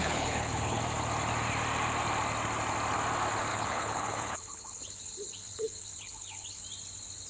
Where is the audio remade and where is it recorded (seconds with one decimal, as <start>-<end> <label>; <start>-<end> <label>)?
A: 0.0-0.8 remade; 0.8-3.5 recorded; 3.5-6.6 remade; 6.6-7.3 recorded